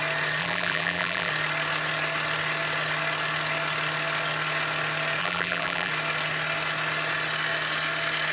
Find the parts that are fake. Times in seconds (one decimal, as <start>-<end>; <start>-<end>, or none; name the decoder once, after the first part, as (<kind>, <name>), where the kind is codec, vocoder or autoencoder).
0.4-1.3 (vocoder, BigVGAN v2); 5.2-5.9